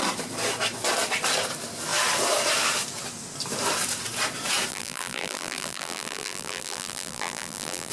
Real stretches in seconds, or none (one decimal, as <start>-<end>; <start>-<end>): 0.0-4.7